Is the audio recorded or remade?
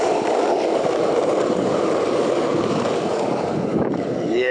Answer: remade